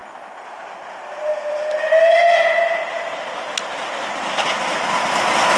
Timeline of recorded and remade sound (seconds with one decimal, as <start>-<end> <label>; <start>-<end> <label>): 0.0-5.6 recorded